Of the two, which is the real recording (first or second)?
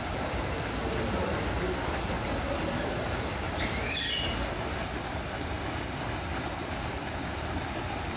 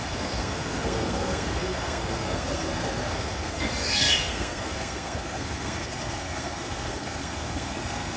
first